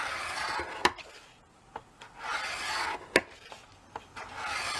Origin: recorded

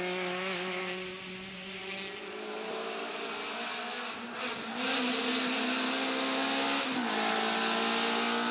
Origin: recorded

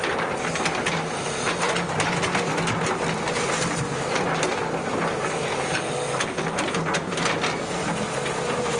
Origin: recorded